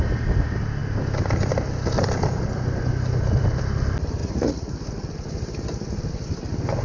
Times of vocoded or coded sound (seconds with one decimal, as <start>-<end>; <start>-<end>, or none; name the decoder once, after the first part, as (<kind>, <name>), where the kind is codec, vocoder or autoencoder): 4.2-4.7 (vocoder, Vocos)